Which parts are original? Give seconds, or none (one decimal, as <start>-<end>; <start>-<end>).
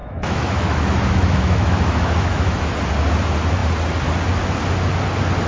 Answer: 2.7-5.5